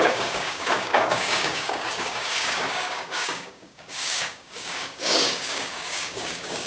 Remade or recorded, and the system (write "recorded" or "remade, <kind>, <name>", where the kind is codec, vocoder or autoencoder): remade, codec, DAC